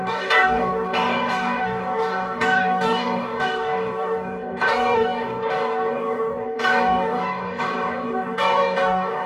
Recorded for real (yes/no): no